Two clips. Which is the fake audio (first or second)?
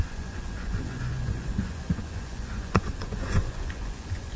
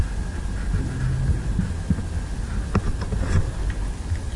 first